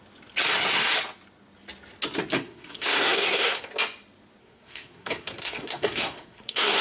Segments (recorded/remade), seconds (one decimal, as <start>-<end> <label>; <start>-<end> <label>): 0.0-2.3 recorded; 2.3-3.7 remade; 3.7-4.4 recorded; 4.4-6.8 remade